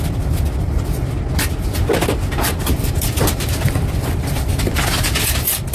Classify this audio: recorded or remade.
recorded